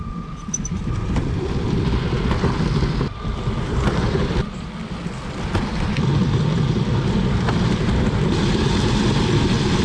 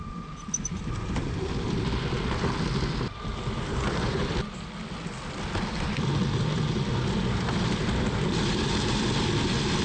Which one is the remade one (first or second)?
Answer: first